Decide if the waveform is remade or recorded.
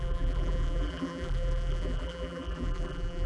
remade